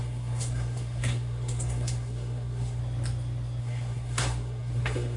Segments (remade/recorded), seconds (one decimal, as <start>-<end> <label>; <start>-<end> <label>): 0.0-2.8 remade; 2.8-3.6 recorded; 3.6-5.2 remade

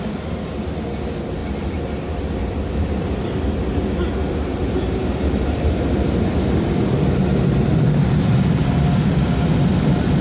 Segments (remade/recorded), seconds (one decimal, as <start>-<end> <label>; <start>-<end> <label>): 0.0-10.2 recorded

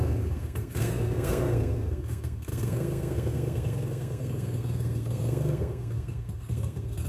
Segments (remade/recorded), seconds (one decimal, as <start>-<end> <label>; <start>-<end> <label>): 0.0-7.1 remade

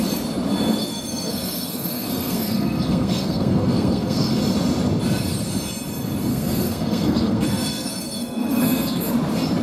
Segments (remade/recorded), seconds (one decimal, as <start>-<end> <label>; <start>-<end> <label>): 0.0-0.8 recorded; 0.8-4.4 remade; 4.4-6.3 recorded; 6.3-9.1 remade; 9.1-9.6 recorded

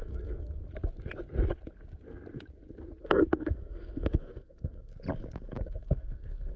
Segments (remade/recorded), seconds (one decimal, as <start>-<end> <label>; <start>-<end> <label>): 0.0-0.6 remade; 0.6-3.0 recorded; 3.0-4.9 remade; 4.9-5.6 recorded; 5.6-6.6 remade

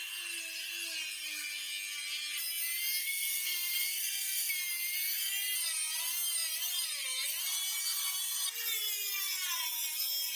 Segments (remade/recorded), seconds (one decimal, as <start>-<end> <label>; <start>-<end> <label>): 0.0-3.0 recorded; 3.0-4.5 remade; 4.5-10.4 recorded

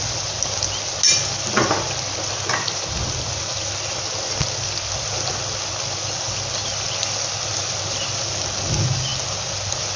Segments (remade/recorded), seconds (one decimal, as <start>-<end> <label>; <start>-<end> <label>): 0.0-10.0 recorded

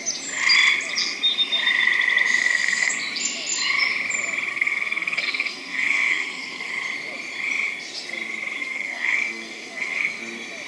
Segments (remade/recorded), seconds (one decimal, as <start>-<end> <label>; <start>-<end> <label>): 0.0-2.4 recorded; 2.4-2.9 remade; 2.9-4.5 recorded; 4.5-6.7 remade; 6.7-8.6 recorded; 8.6-10.2 remade; 10.2-10.7 recorded